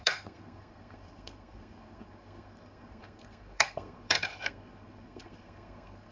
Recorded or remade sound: remade